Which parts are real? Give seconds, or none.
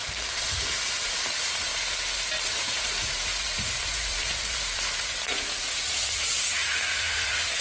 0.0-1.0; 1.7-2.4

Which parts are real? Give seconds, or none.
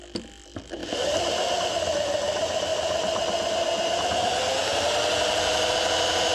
0.0-0.8; 1.7-6.3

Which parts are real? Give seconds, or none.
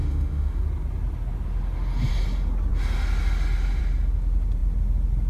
0.6-5.3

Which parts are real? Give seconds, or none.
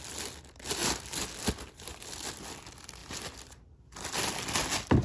0.0-5.0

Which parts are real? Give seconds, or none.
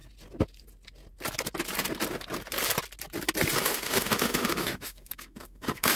0.0-3.6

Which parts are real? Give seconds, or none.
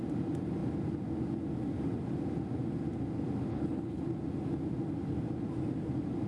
0.0-3.5; 4.0-6.3